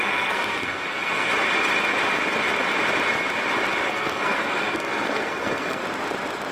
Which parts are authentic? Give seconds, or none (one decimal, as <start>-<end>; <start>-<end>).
1.3-3.9; 5.8-6.5